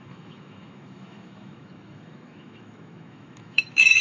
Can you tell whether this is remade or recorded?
remade